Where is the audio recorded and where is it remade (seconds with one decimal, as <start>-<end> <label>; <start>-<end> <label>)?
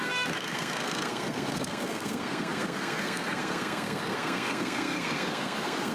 0.0-5.9 remade